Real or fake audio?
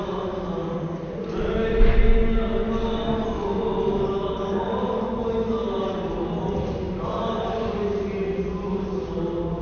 real